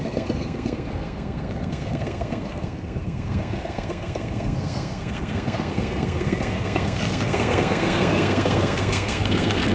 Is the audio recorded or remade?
remade